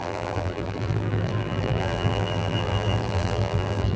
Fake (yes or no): yes